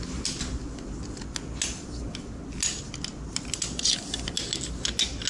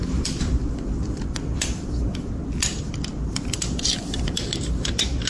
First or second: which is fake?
second